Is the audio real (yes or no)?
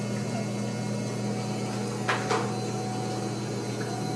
yes